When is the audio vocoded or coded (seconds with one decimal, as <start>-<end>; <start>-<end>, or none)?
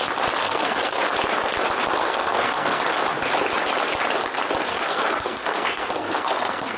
0.4-1.0; 2.0-2.8; 4.7-6.8